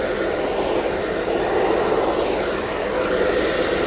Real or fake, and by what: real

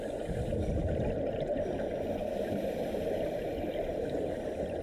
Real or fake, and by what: real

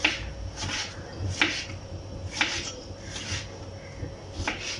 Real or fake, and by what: real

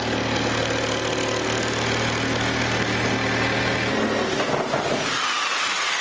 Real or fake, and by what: real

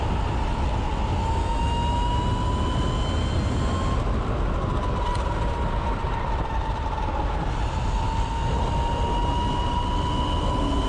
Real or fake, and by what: real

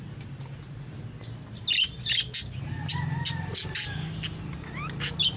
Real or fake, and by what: real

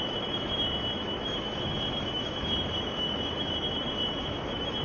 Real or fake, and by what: fake, autoencoder, DAC-VAE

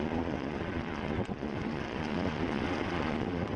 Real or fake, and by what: fake, vocoder, Vocos